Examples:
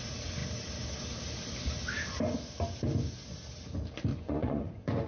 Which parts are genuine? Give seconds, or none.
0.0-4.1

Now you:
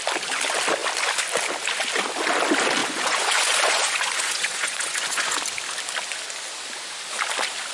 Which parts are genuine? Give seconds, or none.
0.0-2.8; 5.4-7.7

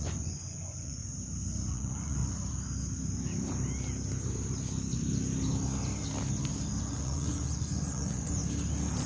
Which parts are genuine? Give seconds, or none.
1.0-1.7; 2.2-6.8; 8.4-9.1

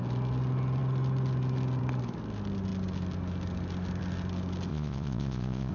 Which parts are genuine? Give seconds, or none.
0.0-4.7

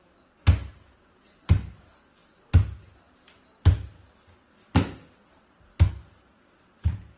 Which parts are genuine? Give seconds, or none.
0.0-7.2

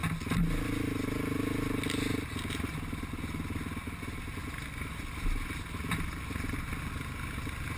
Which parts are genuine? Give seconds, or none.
0.0-7.8